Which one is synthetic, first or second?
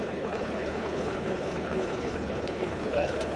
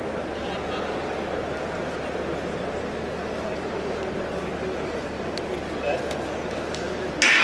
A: first